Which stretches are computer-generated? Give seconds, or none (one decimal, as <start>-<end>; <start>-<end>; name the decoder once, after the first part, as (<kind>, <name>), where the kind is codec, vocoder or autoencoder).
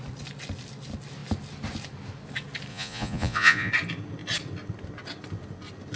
2.7-3.7 (vocoder, Vocos)